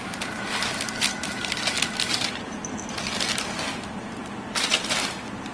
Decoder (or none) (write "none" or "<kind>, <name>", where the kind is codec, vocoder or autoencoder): none